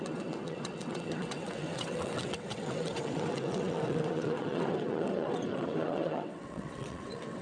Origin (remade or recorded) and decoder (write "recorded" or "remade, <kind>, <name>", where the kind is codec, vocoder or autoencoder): remade, vocoder, WaveNeXt